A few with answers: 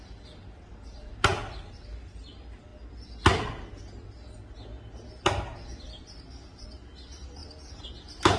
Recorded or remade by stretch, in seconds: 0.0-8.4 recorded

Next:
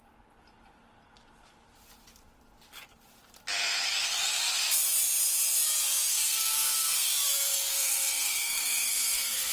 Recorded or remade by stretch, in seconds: 0.0-6.1 recorded; 6.1-7.1 remade; 7.1-7.7 recorded; 7.7-9.5 remade

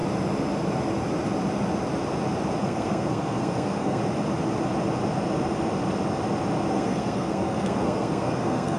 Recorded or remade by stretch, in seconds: 0.0-2.6 recorded; 2.6-4.0 remade; 4.0-6.7 recorded; 6.7-8.8 remade

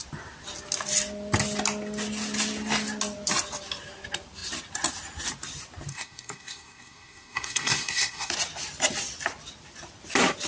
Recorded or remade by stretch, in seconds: 0.0-5.9 recorded; 5.9-8.3 remade; 8.3-10.5 recorded

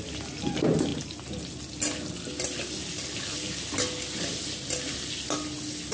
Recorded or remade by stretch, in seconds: 0.0-5.9 recorded

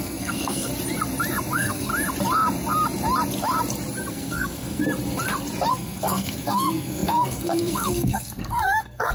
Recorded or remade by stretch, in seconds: 0.0-0.7 remade; 0.7-1.5 recorded; 1.5-1.9 remade; 1.9-4.1 recorded; 4.1-4.8 remade; 4.8-5.7 recorded; 5.7-9.1 remade

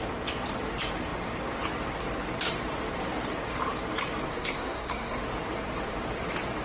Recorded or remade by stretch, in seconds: 0.0-4.3 recorded; 4.3-5.2 remade; 5.2-6.6 recorded

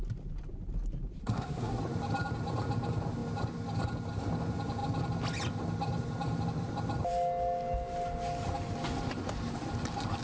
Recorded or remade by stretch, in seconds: 0.0-1.2 recorded; 1.2-1.8 remade; 1.8-10.2 recorded